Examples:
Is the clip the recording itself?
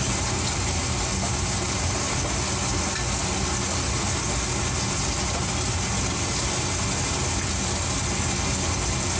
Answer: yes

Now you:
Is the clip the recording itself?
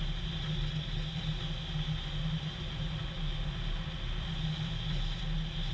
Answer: yes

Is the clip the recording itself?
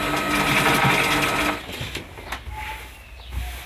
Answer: yes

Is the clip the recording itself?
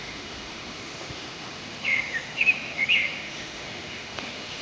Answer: no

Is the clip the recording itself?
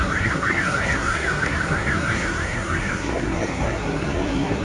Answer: no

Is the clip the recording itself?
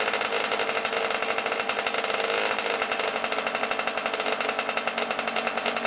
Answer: yes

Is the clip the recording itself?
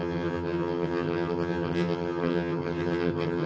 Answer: no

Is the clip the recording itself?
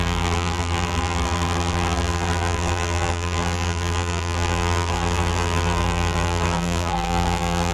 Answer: no